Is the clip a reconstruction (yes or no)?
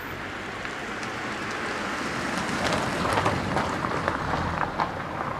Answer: no